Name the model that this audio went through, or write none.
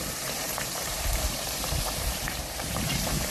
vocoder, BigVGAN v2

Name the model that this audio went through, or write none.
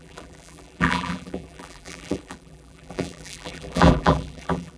vocoder, BigVGAN v2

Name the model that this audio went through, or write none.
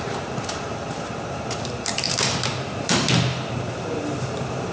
vocoder, BigVGAN v2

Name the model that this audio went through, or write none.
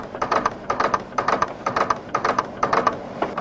vocoder, BigVGAN v2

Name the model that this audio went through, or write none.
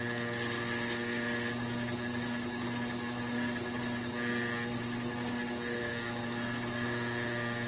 none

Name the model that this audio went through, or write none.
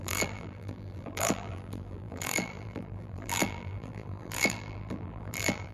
vocoder, BigVGAN v2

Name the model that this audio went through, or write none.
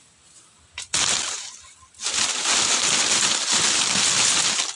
none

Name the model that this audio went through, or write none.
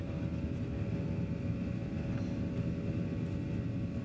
none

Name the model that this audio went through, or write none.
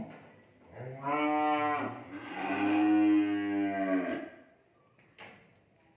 none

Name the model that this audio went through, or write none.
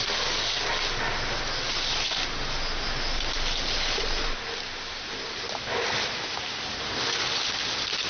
none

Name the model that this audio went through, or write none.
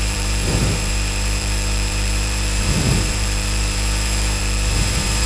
vocoder, BigVGAN v2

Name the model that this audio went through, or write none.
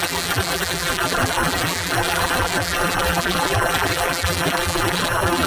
vocoder, BigVGAN v2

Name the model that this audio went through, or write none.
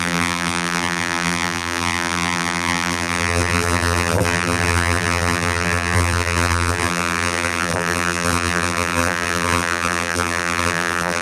vocoder, BigVGAN v2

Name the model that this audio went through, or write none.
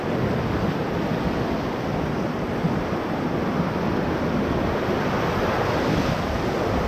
none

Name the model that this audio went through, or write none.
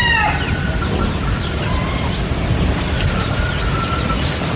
none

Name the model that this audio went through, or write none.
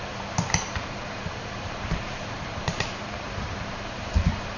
vocoder, BigVGAN v2